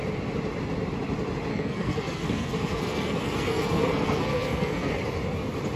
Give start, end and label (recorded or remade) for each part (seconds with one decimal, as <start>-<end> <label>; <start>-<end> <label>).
0.0-1.5 recorded; 1.5-4.9 remade; 4.9-5.8 recorded